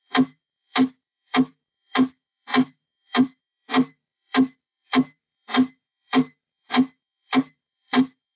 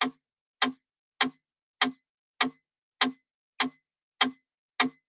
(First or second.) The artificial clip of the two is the first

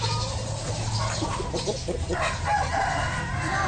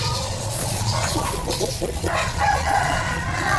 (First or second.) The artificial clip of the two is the second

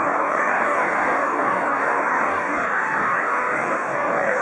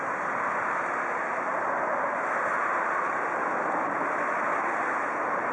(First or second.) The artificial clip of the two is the first